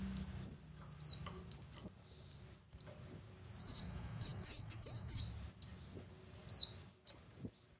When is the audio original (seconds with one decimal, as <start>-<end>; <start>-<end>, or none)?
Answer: 0.0-3.6; 5.2-7.8